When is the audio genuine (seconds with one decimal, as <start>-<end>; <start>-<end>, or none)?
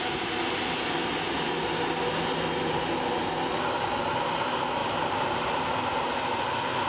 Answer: 0.0-4.8; 5.7-6.9